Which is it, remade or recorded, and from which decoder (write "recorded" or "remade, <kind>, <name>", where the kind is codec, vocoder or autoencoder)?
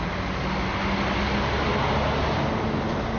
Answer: recorded